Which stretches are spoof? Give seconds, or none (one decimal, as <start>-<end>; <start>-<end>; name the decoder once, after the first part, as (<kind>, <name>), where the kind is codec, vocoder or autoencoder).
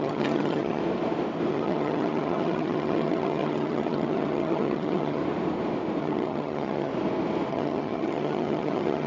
0.0-0.8 (vocoder, HiFi-GAN); 1.5-5.2; 6.0-6.9; 7.5-9.1